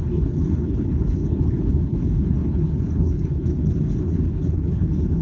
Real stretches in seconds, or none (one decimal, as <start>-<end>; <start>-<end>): none